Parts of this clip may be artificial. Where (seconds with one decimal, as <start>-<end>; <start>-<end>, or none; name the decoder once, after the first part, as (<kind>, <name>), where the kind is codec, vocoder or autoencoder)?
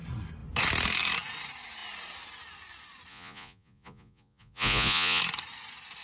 3.1-5.2 (vocoder, Vocos)